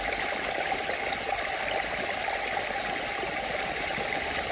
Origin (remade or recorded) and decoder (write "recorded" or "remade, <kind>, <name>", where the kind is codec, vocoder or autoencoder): recorded